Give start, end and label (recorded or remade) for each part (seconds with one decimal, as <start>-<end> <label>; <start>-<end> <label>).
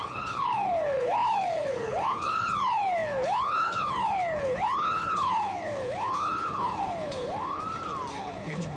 0.0-7.6 remade; 7.6-8.1 recorded; 8.1-8.8 remade